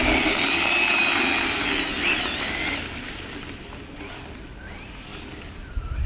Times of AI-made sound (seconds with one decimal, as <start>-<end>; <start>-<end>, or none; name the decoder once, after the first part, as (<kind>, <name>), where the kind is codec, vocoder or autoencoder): none